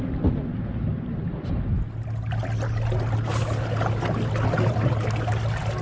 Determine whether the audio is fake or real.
real